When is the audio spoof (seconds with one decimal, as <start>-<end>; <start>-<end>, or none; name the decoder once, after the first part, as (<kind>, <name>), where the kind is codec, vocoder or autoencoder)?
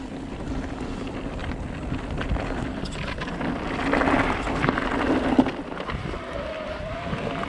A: none